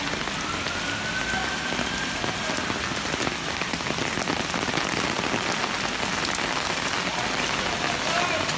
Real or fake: real